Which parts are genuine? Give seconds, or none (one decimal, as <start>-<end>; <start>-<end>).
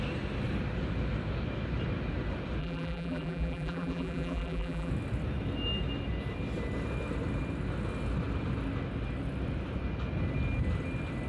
0.0-2.6; 4.9-11.3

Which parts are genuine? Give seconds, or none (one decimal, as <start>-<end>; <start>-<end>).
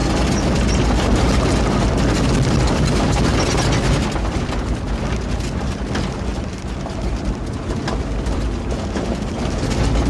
0.0-4.2; 5.0-6.3; 8.8-10.1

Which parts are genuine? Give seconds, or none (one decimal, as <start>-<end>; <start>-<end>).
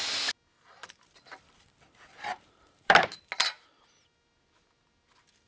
0.0-2.3; 3.2-5.5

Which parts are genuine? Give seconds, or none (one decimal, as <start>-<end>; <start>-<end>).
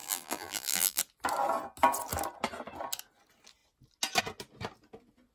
1.0-5.3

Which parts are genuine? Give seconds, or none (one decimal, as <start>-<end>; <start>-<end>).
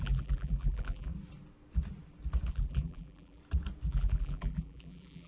1.1-2.5; 3.4-3.9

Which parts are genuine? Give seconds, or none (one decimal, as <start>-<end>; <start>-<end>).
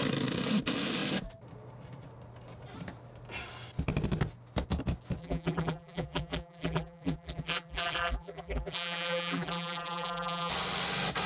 0.0-5.2; 10.5-11.3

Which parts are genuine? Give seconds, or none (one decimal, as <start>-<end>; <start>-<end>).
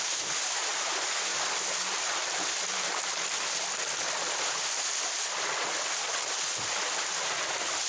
0.0-1.3; 3.8-7.9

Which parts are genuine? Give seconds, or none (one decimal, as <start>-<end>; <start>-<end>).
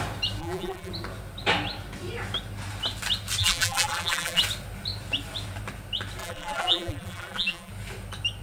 0.0-0.4; 0.9-3.4; 4.4-6.2; 7.7-8.4